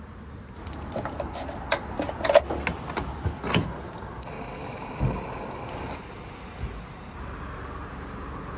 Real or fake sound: real